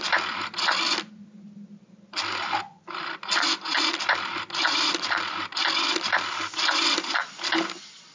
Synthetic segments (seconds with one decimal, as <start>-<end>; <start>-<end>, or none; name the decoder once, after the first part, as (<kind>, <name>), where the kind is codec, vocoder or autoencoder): none